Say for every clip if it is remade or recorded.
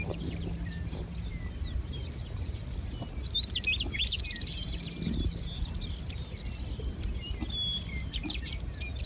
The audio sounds recorded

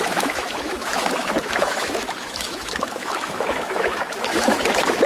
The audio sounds remade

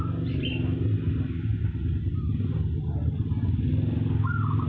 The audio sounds recorded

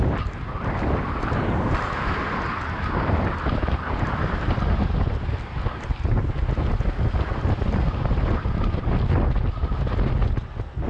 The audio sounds recorded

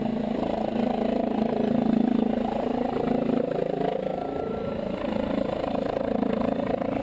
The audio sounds remade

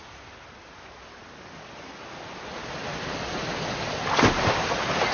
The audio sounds recorded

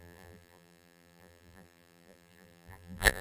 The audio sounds remade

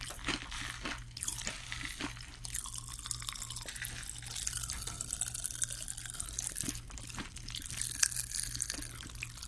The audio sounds recorded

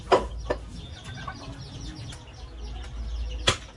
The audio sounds recorded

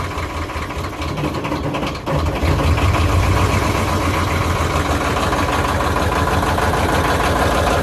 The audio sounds recorded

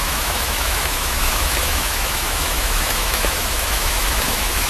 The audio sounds remade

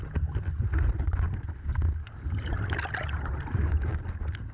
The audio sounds recorded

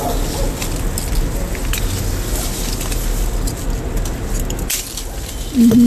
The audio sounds recorded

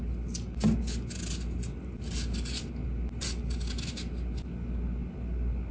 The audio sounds recorded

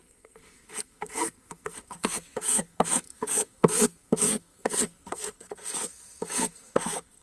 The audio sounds remade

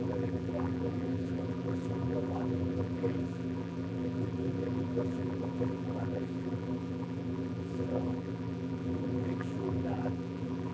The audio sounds remade